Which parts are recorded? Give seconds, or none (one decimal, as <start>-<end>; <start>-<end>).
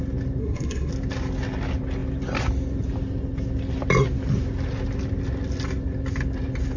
0.0-0.4; 0.9-6.8